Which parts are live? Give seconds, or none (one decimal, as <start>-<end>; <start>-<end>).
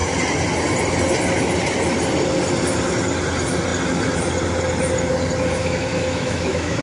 0.0-5.6